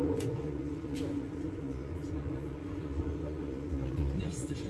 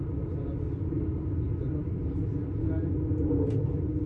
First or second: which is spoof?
first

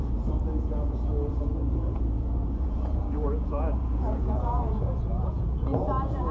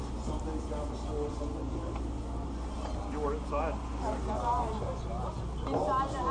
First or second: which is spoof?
first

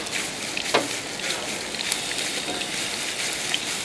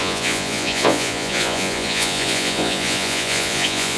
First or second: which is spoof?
second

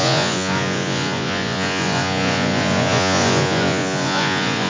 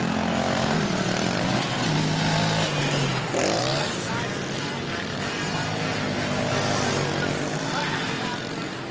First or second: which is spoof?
first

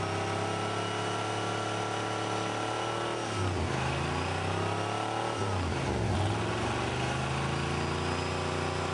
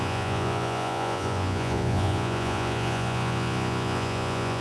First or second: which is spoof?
second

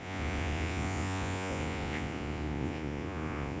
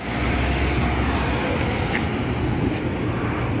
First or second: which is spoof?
first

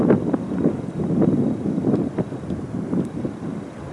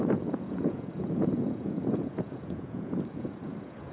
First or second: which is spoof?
second